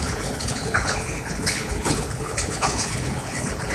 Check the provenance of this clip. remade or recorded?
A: remade